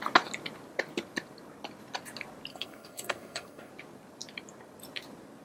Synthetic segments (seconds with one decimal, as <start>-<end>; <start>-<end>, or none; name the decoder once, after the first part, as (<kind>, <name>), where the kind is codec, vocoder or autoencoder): 2.5-3.7 (codec, SNAC)